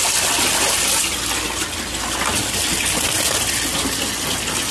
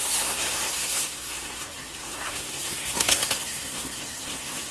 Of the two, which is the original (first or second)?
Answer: first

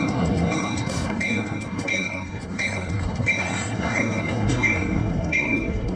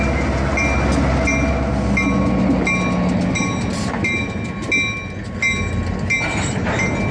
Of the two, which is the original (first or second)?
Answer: second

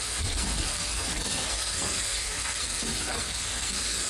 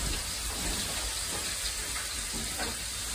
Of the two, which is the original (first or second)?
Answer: second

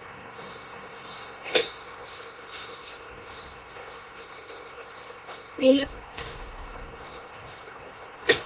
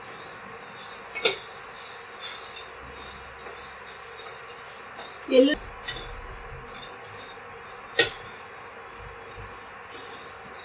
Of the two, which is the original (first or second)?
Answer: second